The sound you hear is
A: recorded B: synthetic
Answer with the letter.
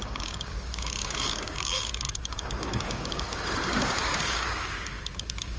B